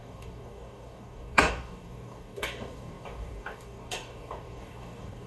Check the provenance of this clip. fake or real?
fake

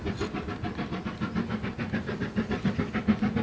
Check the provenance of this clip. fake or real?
real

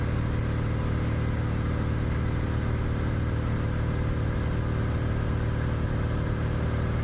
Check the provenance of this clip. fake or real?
real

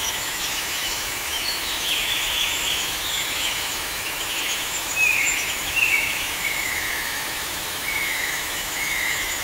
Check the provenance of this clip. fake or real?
fake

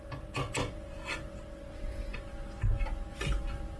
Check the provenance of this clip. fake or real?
real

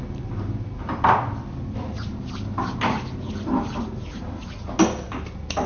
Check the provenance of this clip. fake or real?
real